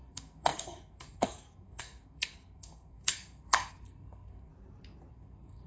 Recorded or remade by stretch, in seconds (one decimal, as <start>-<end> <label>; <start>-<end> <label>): 0.0-4.5 remade; 4.5-5.1 recorded; 5.1-5.7 remade